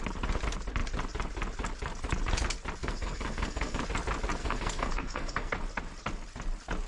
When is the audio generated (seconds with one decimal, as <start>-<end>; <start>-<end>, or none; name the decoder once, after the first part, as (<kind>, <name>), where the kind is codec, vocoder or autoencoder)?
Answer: 2.8-3.8 (codec, SNAC); 4.4-5.5